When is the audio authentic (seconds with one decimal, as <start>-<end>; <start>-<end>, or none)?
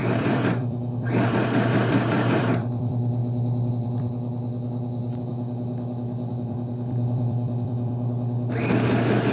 7.9-9.3